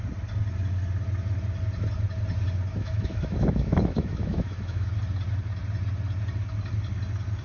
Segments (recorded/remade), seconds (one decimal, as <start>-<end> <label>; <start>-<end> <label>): 0.0-2.7 recorded; 2.7-4.9 remade; 4.9-7.4 recorded